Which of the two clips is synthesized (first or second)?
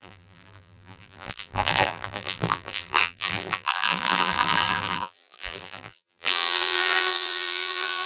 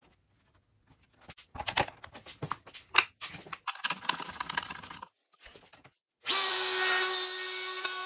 first